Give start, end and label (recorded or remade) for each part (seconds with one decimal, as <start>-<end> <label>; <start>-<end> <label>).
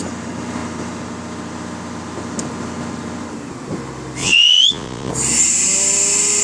0.0-4.2 recorded; 4.2-5.1 remade; 5.1-6.4 recorded